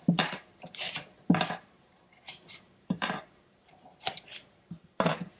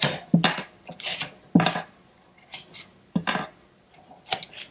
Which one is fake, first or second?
first